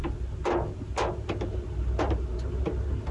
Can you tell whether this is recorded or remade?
recorded